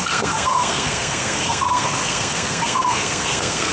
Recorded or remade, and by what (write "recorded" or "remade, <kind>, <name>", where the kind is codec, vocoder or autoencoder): remade, codec, SNAC